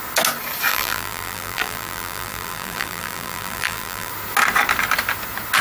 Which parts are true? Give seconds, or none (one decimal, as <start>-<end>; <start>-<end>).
0.0-0.7; 4.1-5.6